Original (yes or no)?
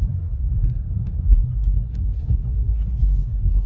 no